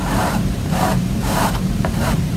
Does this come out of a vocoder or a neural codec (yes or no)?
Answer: yes